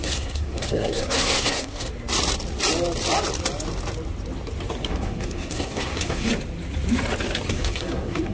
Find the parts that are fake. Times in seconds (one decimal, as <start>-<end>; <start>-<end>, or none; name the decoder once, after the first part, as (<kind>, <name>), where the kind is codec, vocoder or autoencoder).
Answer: 0.0-1.9 (codec, SNAC); 4.9-6.3; 7.5-8.3

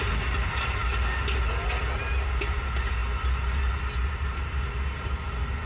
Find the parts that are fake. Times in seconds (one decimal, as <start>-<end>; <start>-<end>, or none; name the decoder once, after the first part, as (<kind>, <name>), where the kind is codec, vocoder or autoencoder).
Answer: none

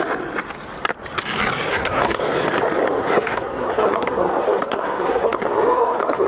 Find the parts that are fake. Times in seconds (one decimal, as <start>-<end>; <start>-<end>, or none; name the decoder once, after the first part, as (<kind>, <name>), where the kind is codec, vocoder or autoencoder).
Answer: 1.7-2.2 (codec, SNAC); 3.0-6.3

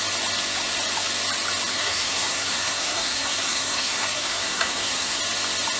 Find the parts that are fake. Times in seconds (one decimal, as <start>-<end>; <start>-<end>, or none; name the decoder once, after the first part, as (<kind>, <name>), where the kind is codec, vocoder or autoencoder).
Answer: 1.7-5.2 (codec, SNAC)

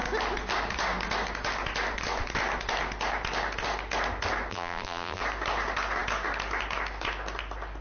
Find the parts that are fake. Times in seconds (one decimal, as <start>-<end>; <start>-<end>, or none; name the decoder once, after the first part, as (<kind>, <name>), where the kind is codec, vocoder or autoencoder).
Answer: 4.5-5.2 (vocoder, BigVGAN v2)